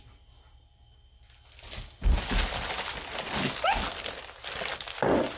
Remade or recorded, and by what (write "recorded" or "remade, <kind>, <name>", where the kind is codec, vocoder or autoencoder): recorded